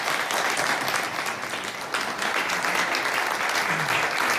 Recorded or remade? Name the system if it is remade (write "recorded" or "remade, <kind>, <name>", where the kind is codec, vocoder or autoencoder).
recorded